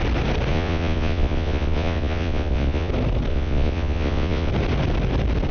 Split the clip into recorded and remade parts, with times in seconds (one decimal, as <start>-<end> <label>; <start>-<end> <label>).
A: 0.0-0.5 recorded; 0.5-2.9 remade; 2.9-3.3 recorded; 3.3-4.5 remade; 4.5-5.5 recorded